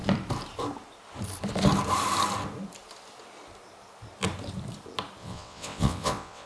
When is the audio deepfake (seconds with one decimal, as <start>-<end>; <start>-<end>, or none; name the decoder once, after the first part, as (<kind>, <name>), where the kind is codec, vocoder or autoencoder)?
5.2-6.5 (vocoder, WaveNeXt)